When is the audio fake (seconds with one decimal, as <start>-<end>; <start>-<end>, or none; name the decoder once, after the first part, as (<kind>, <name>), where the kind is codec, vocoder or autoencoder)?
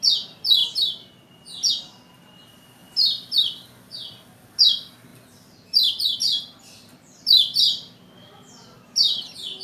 0.0-0.6 (vocoder, BigVGAN v2); 1.7-9.6